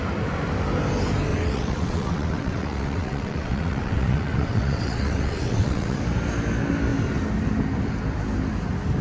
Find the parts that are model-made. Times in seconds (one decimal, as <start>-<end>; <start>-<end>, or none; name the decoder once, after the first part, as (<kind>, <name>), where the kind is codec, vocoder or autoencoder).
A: 1.3-6.0 (vocoder, WaveNeXt)